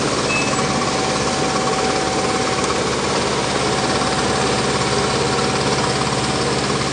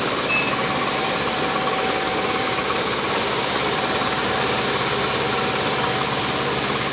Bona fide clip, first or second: first